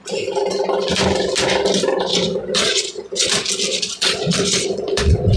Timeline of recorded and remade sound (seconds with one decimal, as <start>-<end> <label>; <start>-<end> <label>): 0.0-2.1 recorded; 2.1-3.3 remade; 3.3-3.7 recorded; 3.7-5.4 remade